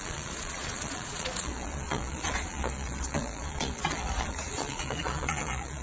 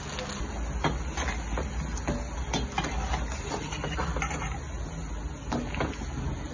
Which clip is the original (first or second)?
second